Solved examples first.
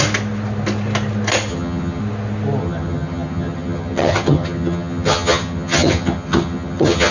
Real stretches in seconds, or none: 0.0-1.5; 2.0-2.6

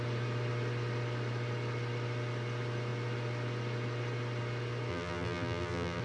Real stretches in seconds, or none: 0.0-4.9

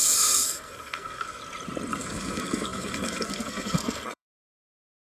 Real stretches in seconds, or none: 1.4-1.9

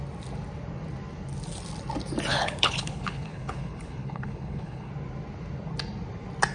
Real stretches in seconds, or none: 0.0-2.3; 4.9-6.5

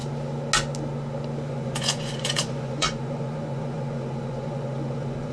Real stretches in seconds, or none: 0.0-1.5